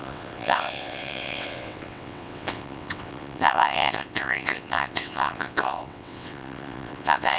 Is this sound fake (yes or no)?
yes